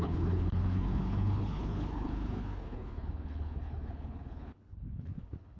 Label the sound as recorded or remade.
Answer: remade